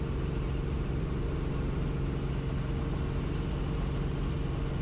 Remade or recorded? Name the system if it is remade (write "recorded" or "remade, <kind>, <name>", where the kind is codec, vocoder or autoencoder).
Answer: recorded